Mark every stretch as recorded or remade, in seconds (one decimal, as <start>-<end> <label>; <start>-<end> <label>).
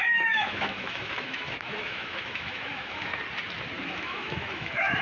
0.0-3.1 remade; 3.1-3.8 recorded; 3.8-5.0 remade